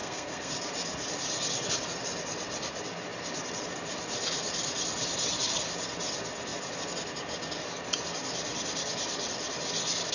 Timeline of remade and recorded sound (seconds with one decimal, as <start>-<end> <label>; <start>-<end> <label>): 0.0-0.5 remade; 0.5-10.1 recorded